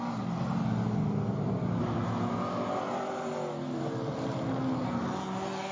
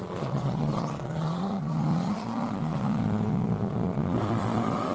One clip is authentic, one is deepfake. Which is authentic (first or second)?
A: first